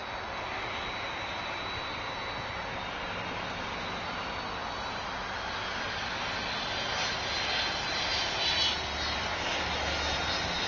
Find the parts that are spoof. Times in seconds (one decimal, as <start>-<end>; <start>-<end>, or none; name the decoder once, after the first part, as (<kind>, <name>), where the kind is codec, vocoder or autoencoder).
none